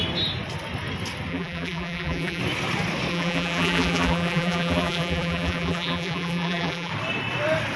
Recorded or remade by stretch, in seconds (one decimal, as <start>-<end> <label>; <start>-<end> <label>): 0.0-1.3 recorded; 1.3-2.4 remade; 2.4-3.1 recorded; 3.1-6.9 remade; 6.9-7.8 recorded